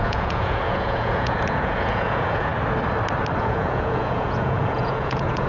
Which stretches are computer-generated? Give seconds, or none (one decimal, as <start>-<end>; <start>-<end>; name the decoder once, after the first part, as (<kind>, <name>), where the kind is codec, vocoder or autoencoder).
0.0-2.5 (vocoder, Vocos); 3.4-5.5